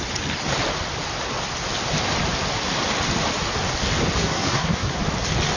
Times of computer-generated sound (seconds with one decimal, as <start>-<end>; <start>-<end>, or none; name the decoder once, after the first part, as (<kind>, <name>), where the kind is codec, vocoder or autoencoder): 4.2-5.0 (codec, SNAC)